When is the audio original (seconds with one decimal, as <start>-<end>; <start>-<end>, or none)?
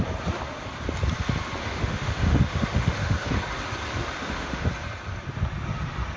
0.0-1.6; 3.3-4.0; 4.7-6.2